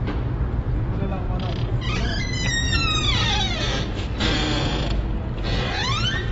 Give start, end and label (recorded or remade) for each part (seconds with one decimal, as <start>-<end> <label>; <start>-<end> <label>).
0.0-6.3 recorded